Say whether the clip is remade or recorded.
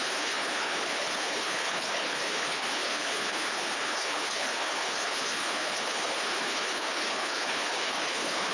remade